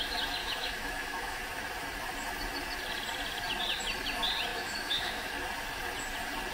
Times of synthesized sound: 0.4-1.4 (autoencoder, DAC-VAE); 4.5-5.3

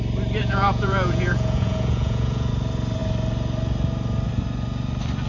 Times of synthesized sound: 0.4-2.5 (vocoder, Vocos)

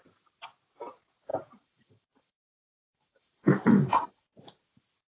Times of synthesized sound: 1.3-4.4 (vocoder, BigVGAN v2)

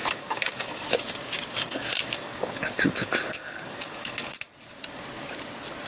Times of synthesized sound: 0.0-0.8 (codec, DAC); 1.5-4.4

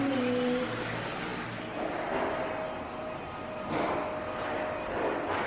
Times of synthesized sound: none

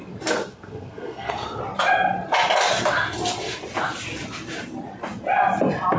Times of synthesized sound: 0.5-1.6 (codec, SNAC)